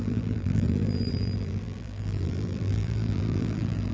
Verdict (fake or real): fake